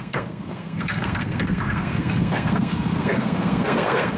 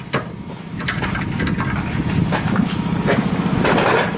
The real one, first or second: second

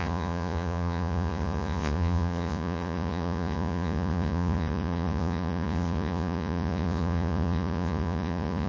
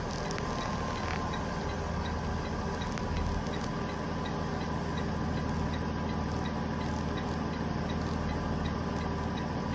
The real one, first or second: second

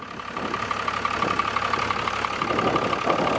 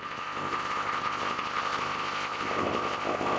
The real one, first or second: first